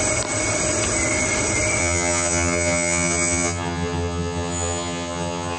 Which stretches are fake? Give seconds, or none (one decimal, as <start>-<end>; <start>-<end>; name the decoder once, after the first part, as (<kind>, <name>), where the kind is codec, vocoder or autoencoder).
1.8-5.6 (vocoder, HiFi-GAN)